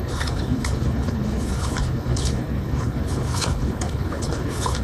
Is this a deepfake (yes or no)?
yes